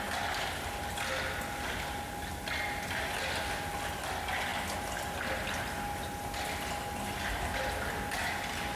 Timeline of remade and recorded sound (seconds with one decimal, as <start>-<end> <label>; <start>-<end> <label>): 0.0-8.8 recorded